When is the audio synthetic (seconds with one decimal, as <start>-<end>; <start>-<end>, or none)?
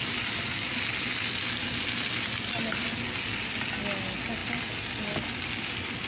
none